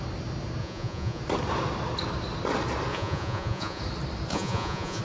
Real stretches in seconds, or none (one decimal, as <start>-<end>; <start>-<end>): 0.0-0.6; 1.2-2.9; 3.8-4.3